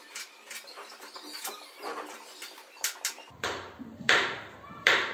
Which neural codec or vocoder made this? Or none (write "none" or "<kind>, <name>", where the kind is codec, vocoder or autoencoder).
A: vocoder, BigVGAN v2